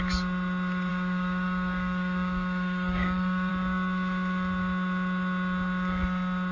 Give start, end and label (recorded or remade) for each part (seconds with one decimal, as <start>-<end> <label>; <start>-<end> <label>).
0.0-0.9 recorded; 0.9-3.5 remade; 3.5-6.5 recorded